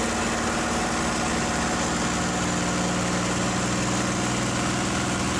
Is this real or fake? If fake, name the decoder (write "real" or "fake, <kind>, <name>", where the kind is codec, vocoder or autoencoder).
real